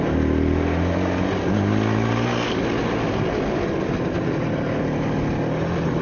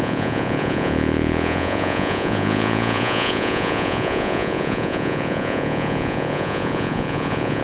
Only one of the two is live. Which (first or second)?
first